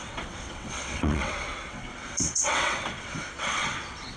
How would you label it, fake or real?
fake